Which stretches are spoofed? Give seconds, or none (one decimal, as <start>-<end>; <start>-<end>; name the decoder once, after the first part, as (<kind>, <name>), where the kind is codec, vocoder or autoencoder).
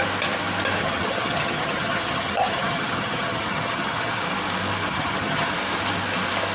0.8-4.2 (vocoder, HiFi-GAN); 4.9-5.5